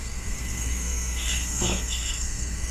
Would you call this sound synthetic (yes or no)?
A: yes